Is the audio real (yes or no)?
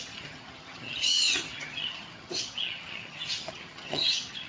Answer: no